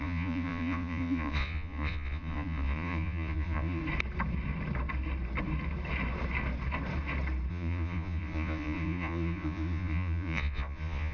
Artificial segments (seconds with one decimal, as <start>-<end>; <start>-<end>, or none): 0.0-3.8; 7.5-11.1